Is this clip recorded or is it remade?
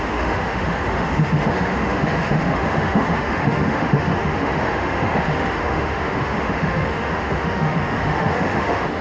remade